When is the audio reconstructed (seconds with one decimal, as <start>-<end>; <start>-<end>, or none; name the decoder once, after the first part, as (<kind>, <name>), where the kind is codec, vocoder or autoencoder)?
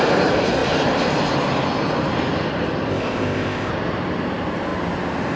2.9-3.7 (codec, ZipCodec)